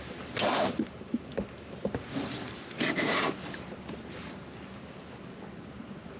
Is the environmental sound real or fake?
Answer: real